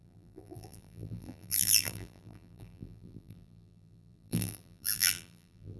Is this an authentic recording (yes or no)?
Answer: no